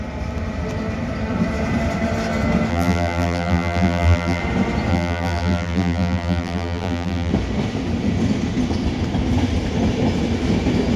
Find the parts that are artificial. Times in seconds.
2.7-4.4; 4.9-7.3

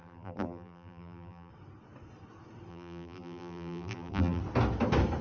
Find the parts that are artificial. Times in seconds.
0.0-1.5; 2.7-4.4

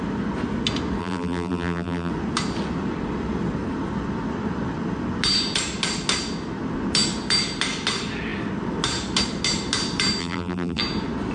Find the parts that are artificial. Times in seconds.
1.0-2.1; 10.2-10.8

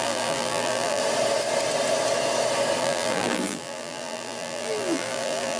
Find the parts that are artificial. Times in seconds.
0.0-1.0; 2.8-5.6

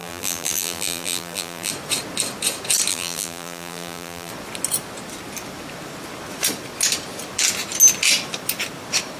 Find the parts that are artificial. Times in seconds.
0.0-1.7; 2.9-4.3